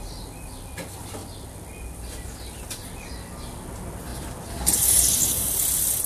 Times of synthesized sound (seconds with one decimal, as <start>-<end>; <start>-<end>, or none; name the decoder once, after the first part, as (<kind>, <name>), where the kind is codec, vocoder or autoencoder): none